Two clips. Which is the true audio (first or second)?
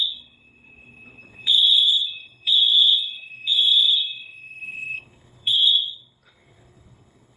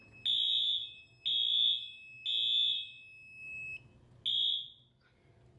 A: second